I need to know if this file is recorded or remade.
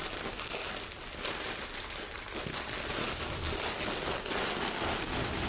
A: recorded